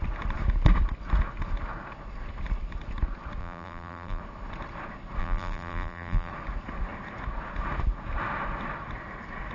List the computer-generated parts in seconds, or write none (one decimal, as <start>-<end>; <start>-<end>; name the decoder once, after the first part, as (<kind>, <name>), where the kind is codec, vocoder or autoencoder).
3.4-4.2 (vocoder, BigVGAN v2); 5.2-6.3